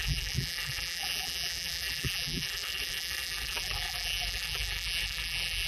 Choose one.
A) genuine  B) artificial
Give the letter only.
B